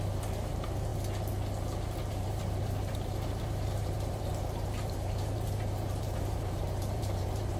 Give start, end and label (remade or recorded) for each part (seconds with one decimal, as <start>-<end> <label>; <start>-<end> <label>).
0.0-0.9 remade; 0.9-2.1 recorded; 2.1-7.6 remade